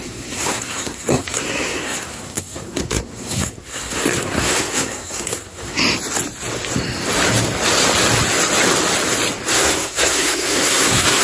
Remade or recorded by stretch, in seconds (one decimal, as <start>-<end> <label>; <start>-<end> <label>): 0.0-5.8 remade; 5.8-9.5 recorded; 9.5-11.2 remade